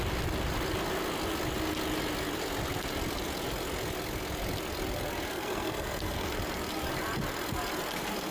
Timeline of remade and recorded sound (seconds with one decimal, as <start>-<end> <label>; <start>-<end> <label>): 0.0-5.3 recorded; 5.3-6.3 remade; 6.3-8.3 recorded